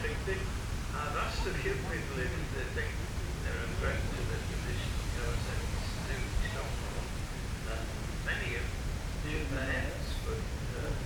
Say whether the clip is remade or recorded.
recorded